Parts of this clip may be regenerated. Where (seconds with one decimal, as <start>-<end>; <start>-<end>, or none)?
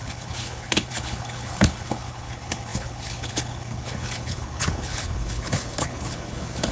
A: 0.0-6.7